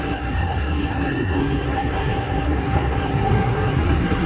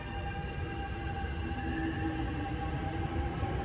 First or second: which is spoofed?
first